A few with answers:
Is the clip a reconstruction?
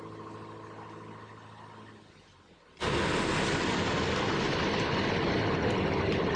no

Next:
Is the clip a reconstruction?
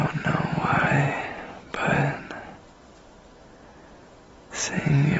no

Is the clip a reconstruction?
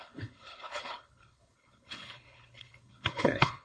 yes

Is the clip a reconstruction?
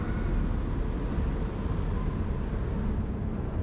no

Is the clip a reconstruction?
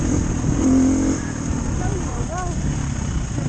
no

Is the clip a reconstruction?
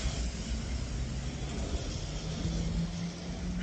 no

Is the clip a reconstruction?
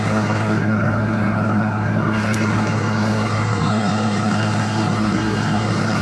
yes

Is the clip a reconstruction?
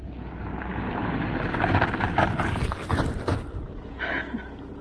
no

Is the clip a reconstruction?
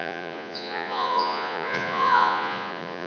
yes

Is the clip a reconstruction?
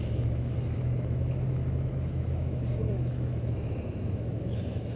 yes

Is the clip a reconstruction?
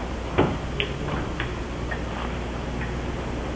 no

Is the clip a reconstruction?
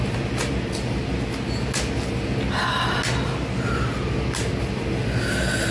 no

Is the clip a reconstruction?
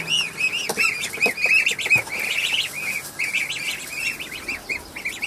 no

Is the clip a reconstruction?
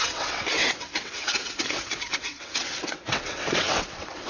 yes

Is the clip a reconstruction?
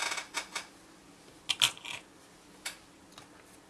no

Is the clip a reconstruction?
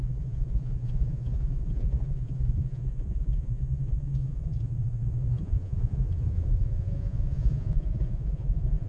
yes